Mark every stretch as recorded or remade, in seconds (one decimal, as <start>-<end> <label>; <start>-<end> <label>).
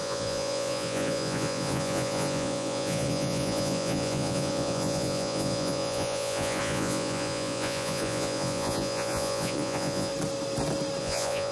0.0-10.1 remade; 10.1-11.0 recorded; 11.0-11.5 remade